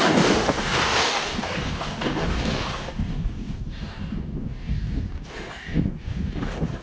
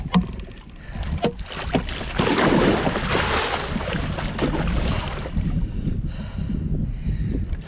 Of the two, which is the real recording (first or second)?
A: second